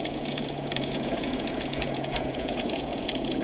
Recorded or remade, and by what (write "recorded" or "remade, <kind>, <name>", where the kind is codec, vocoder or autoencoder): remade, vocoder, Vocos